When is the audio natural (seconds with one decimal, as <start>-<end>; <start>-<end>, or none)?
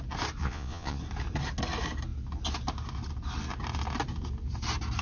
0.0-0.4; 1.0-5.0